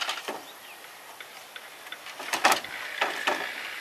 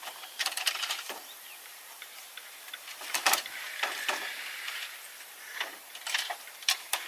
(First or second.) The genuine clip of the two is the first